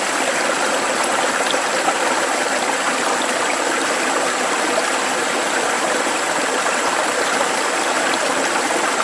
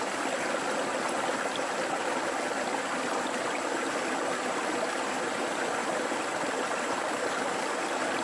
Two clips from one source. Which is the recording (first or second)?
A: second